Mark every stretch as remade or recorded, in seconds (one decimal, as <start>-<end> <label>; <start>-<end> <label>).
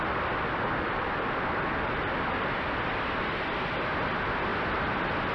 0.0-5.3 recorded